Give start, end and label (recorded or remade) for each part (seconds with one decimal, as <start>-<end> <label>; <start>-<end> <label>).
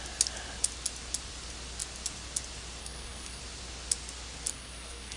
0.0-2.8 recorded; 2.8-3.4 remade; 3.4-4.5 recorded; 4.5-5.2 remade